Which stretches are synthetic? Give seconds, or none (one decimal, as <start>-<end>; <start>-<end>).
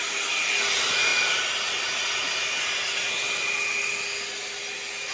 none